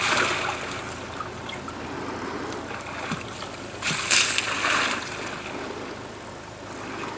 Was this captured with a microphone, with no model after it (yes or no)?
yes